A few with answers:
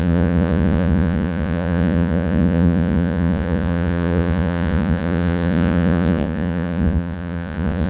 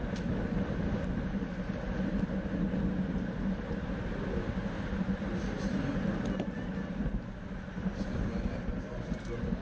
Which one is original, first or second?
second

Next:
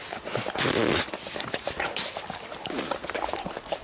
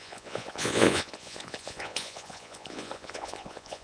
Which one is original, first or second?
first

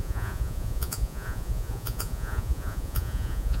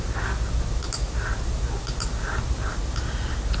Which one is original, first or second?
second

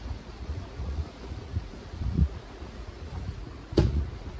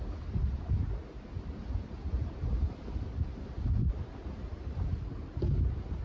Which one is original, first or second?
second